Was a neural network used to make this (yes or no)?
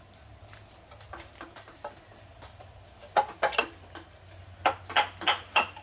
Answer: no